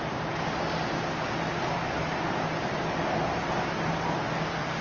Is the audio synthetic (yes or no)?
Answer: no